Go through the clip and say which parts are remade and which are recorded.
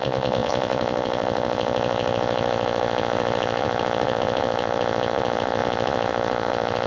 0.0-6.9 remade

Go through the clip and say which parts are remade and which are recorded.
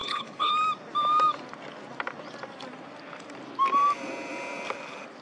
0.0-0.5 remade; 0.5-5.2 recorded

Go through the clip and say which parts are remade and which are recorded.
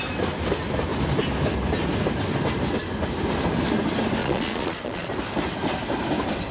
0.0-4.2 recorded; 4.2-5.1 remade; 5.1-6.5 recorded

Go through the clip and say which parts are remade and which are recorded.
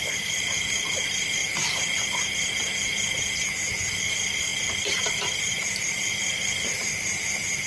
0.0-1.4 remade; 1.4-4.0 recorded; 4.0-7.7 remade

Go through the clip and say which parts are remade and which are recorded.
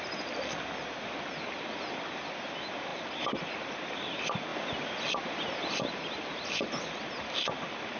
0.0-8.0 recorded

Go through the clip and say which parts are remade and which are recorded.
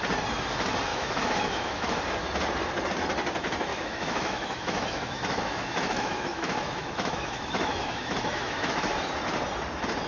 0.0-0.9 recorded; 0.9-2.0 remade; 2.0-3.7 recorded; 3.7-8.9 remade; 8.9-10.1 recorded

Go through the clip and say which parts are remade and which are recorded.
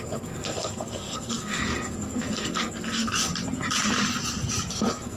0.0-3.3 remade; 3.3-4.7 recorded; 4.7-5.2 remade